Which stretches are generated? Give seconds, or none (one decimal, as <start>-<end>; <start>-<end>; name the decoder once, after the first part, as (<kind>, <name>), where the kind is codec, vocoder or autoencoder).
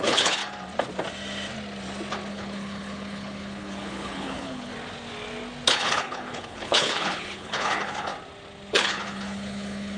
0.0-0.4 (codec, HILCodec); 2.3-4.7; 5.7-8.1; 8.7-10.0